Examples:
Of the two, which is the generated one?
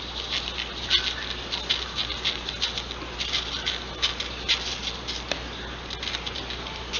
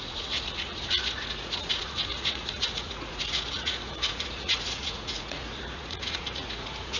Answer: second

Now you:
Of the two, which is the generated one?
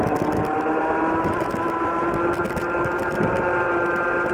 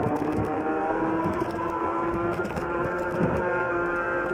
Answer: second